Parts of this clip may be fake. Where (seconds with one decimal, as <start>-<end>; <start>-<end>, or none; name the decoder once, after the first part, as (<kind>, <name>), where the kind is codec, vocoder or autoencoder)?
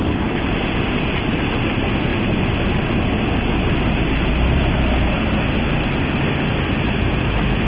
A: none